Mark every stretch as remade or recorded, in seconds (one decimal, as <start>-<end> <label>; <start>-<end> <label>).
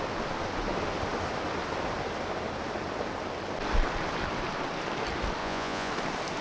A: 0.0-5.4 recorded; 5.4-5.9 remade; 5.9-6.4 recorded